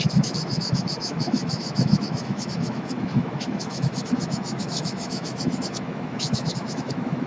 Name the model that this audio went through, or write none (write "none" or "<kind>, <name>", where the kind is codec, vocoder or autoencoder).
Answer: autoencoder, DAC-VAE